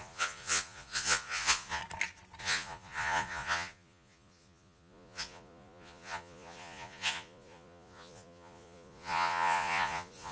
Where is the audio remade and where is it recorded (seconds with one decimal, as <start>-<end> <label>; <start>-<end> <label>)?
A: 0.0-1.8 remade; 1.8-2.4 recorded; 2.4-10.3 remade

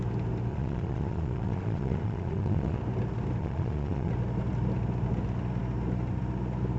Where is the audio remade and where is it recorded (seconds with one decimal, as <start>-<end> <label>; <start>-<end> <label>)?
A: 0.0-0.5 recorded; 0.5-2.8 remade; 2.8-3.4 recorded; 3.4-4.1 remade; 4.1-6.8 recorded

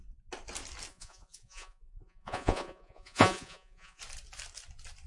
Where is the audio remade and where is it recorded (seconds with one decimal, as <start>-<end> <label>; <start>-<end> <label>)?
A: 0.0-0.9 recorded; 0.9-4.0 remade; 4.0-5.1 recorded

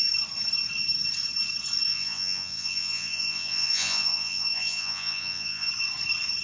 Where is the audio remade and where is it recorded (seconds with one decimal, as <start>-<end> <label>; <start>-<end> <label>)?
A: 0.0-1.9 recorded; 1.9-5.7 remade; 5.7-6.4 recorded

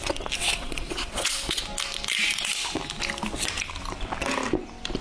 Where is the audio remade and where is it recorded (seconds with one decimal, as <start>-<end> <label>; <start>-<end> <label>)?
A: 0.0-0.4 recorded; 0.4-1.6 remade; 1.6-5.0 recorded

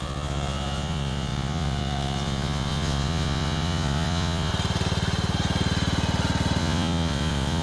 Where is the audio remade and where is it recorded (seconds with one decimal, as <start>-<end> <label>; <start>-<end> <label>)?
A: 0.0-4.5 remade; 4.5-6.6 recorded; 6.6-7.6 remade

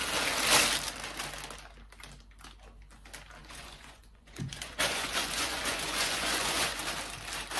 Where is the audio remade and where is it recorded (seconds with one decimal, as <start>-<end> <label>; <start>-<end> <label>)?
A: 0.0-3.4 recorded; 3.4-6.8 remade; 6.8-7.6 recorded

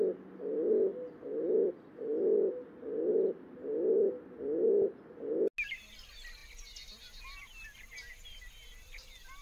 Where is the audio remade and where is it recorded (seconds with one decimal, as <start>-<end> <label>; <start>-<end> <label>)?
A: 0.0-9.4 recorded